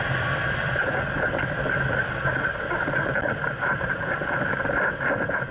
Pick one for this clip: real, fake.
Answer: real